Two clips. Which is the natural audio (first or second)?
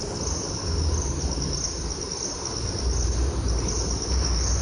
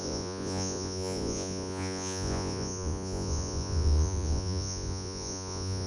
first